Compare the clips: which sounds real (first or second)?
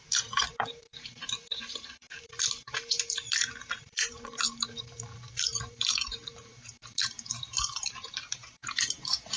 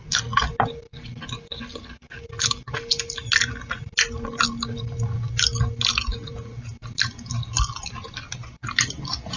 second